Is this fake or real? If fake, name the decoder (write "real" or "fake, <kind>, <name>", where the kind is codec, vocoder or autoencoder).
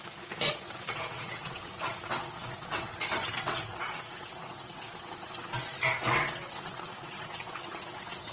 fake, vocoder, WaveNeXt